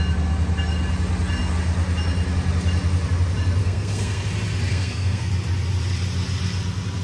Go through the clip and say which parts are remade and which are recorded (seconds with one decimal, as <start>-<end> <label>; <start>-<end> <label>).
0.0-3.6 recorded; 3.6-4.2 remade; 4.2-4.7 recorded; 4.7-5.3 remade; 5.3-7.0 recorded